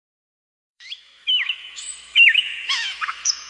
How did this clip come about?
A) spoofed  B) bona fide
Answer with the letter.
A